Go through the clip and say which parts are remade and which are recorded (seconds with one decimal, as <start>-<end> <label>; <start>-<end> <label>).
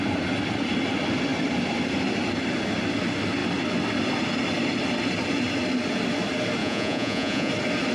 0.0-6.6 recorded; 6.6-7.5 remade; 7.5-7.9 recorded